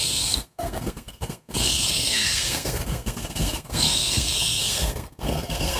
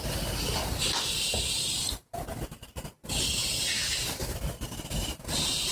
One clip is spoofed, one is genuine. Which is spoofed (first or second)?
first